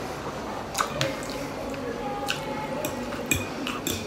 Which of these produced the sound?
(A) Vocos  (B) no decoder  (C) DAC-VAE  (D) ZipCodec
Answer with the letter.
B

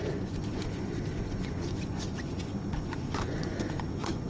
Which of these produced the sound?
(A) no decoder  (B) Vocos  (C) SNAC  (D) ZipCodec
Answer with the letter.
B